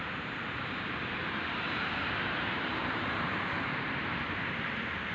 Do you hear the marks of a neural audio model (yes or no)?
yes